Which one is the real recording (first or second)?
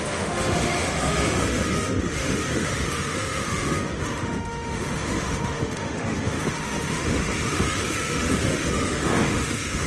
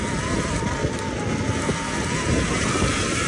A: second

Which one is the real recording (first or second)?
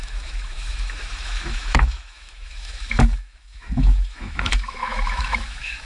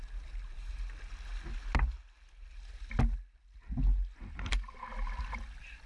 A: second